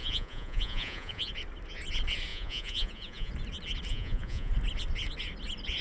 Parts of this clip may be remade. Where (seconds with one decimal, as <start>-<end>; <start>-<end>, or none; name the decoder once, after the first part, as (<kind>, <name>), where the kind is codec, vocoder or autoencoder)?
0.0-1.3 (vocoder, Vocos); 2.3-3.3; 3.9-4.5